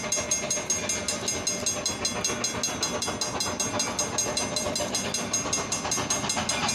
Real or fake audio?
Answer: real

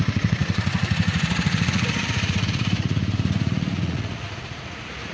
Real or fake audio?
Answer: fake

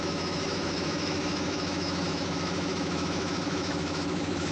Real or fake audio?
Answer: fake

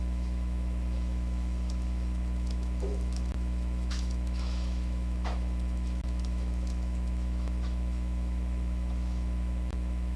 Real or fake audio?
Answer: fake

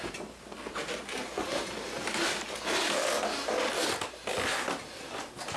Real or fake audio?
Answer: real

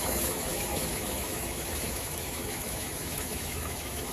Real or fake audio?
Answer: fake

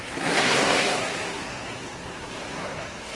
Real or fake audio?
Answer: fake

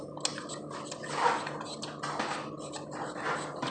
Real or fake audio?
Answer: real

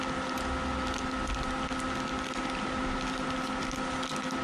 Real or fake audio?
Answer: real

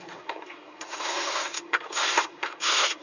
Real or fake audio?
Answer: fake